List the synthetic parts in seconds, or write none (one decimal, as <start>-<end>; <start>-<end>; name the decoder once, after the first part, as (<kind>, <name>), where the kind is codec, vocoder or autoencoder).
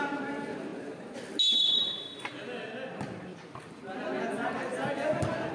none